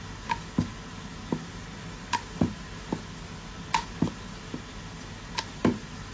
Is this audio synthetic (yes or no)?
no